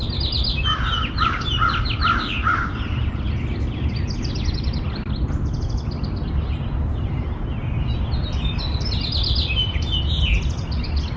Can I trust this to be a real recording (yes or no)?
yes